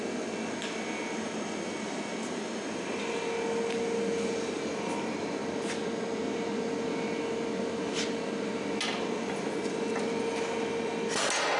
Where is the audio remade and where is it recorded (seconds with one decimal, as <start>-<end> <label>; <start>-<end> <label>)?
0.0-11.6 recorded